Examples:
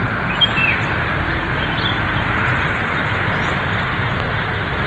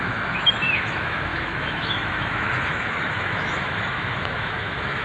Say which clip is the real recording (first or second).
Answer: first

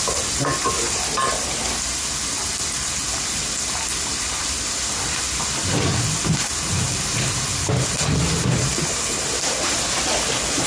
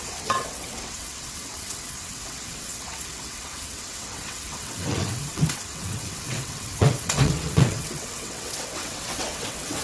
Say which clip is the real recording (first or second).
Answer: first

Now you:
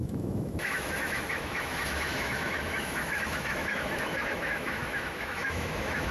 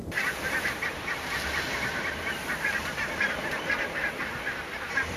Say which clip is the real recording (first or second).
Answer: second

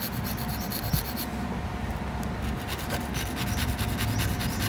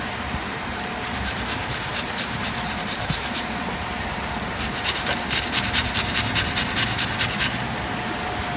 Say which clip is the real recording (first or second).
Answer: first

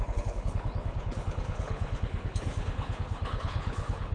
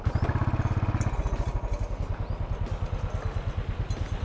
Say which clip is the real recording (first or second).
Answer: second